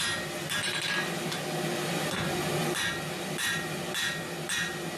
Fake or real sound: real